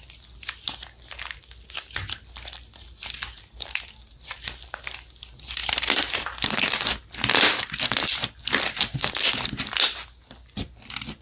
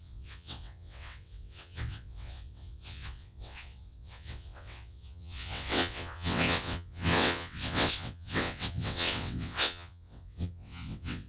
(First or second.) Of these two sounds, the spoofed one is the second